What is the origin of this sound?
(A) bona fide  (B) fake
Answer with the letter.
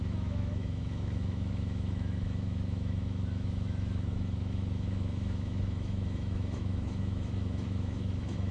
B